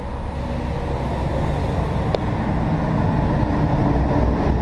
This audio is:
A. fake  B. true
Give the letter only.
B